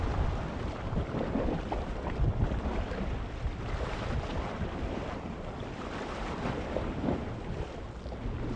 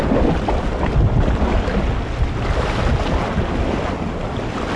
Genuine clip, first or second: second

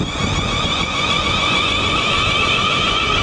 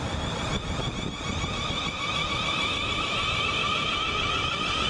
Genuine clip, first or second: second